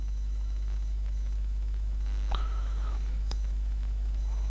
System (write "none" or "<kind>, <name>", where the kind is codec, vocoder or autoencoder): autoencoder, DAC-VAE